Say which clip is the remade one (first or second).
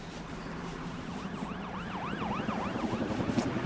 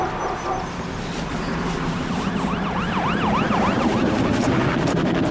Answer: first